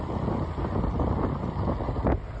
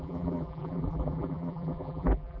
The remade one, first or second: second